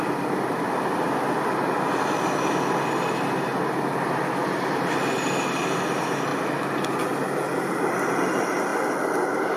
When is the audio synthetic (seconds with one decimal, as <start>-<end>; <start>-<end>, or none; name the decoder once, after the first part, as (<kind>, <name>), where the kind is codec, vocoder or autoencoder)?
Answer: none